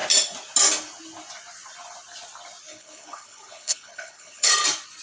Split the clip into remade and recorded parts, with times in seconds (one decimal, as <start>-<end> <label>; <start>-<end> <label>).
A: 0.0-2.7 recorded; 2.7-4.5 remade; 4.5-5.0 recorded